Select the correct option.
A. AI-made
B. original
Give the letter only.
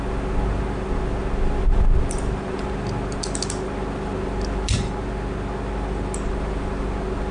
B